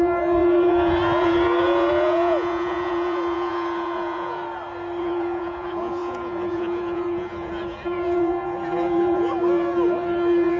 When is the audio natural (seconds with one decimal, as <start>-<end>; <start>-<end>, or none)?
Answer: 4.4-5.0